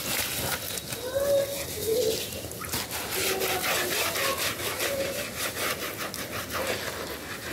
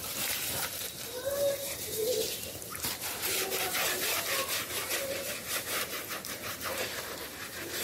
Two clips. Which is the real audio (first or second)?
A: first